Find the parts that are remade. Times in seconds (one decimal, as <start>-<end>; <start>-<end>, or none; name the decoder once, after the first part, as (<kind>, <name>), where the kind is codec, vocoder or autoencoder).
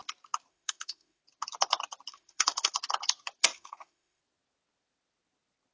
0.5-1.2 (autoencoder, DAC-VAE); 2.1-2.7; 3.4-4.2